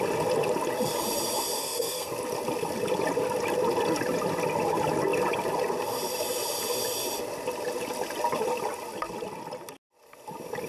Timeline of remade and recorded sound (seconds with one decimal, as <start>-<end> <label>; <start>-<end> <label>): 0.0-1.6 recorded; 1.6-2.1 remade; 2.1-10.7 recorded